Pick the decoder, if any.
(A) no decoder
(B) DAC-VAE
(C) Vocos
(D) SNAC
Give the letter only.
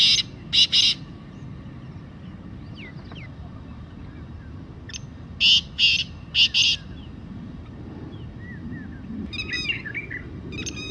A